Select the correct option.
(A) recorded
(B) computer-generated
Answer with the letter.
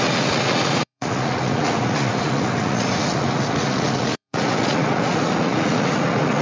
B